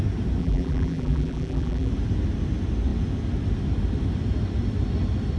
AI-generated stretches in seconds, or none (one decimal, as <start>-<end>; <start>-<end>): 0.4-1.9